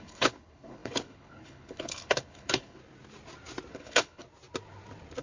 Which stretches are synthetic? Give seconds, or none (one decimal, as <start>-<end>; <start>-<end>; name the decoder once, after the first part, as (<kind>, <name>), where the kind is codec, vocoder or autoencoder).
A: 0.0-2.8 (codec, HILCodec); 3.7-4.2